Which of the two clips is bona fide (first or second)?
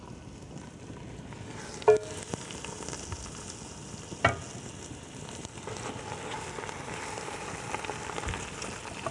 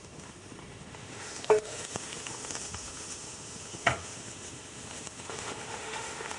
first